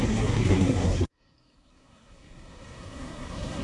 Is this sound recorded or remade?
remade